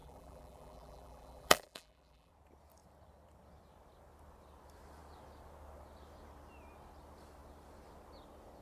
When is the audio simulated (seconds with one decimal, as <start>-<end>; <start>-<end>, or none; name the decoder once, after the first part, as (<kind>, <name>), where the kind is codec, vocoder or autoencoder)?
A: 0.0-2.3 (vocoder, BigVGAN v2)